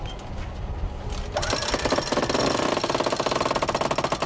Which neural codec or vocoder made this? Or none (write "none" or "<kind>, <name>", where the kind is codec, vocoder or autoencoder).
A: none